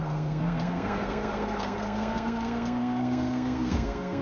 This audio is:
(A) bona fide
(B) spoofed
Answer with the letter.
B